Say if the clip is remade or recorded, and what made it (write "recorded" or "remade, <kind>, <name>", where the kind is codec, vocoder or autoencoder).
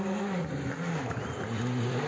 recorded